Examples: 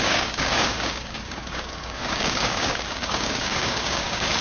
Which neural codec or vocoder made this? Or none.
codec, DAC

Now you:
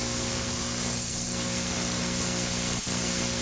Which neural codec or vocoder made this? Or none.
codec, SNAC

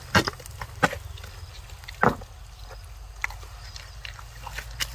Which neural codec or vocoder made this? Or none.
none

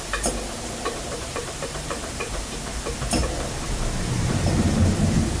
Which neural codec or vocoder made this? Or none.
vocoder, BigVGAN v2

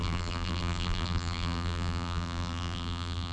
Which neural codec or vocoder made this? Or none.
vocoder, BigVGAN v2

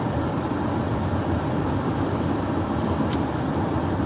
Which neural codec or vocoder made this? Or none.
vocoder, BigVGAN v2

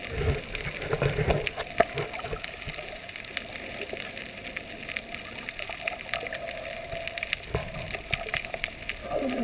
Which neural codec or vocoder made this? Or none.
none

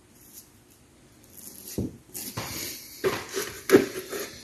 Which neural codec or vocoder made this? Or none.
none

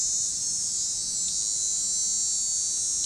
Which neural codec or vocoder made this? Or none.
none